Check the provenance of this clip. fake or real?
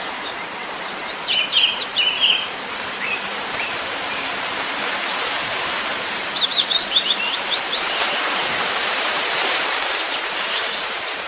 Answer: fake